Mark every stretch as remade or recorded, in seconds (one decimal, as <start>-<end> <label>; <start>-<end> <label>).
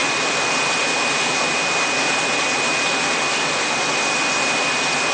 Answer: 0.0-5.1 recorded